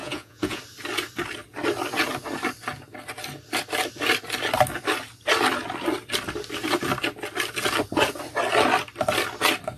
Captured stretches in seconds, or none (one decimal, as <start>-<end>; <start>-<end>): 0.6-9.8